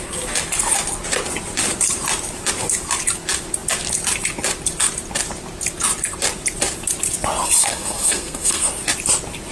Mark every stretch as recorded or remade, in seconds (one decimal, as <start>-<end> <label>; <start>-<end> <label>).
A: 0.0-7.6 recorded; 7.6-8.7 remade; 8.7-9.5 recorded